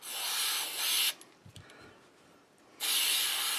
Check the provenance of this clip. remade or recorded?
recorded